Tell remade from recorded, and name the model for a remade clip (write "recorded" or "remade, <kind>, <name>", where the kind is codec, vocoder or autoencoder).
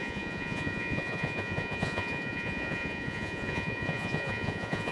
remade, vocoder, Vocos